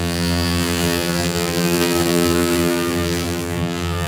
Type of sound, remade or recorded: remade